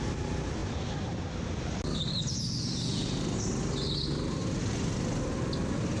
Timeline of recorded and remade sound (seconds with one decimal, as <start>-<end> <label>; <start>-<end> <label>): 0.0-6.0 recorded